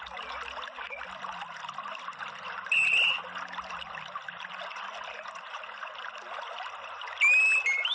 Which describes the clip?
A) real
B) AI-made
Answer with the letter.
A